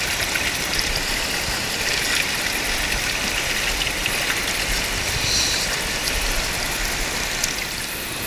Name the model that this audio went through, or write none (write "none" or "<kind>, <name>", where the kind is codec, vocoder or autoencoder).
none